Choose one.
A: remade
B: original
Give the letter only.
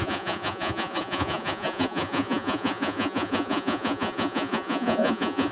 A